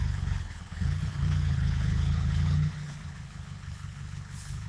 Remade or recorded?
remade